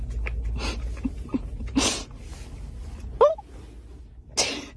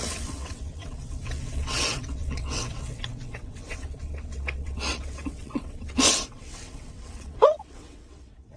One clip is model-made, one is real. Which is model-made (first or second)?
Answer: second